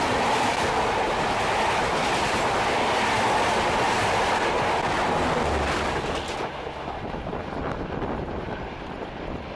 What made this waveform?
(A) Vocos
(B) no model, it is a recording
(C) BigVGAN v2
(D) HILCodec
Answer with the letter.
B